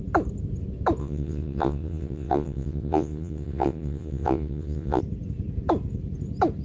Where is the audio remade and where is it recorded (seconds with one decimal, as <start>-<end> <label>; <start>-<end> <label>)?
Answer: 0.0-1.0 recorded; 1.0-5.0 remade; 5.0-6.6 recorded